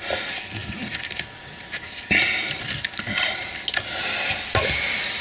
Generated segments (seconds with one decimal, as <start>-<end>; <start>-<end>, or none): none